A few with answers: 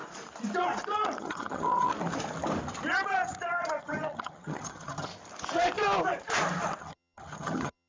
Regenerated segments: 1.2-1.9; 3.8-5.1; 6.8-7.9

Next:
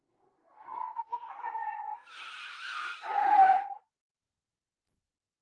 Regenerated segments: 0.0-1.4

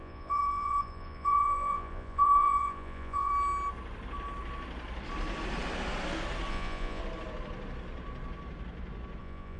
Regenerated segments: 0.0-3.3; 6.5-7.0; 9.2-9.6

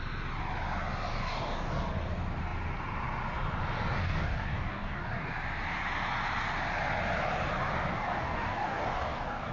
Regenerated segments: 1.1-1.7; 4.0-5.3; 7.9-9.5

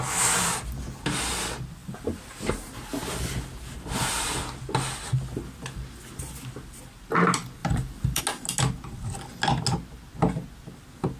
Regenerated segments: 1.8-2.5; 7.6-8.2

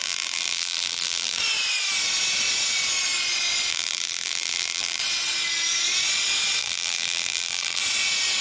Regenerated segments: 0.0-1.4; 3.7-5.0; 6.6-7.8

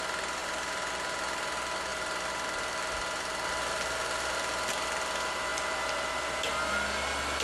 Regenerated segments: none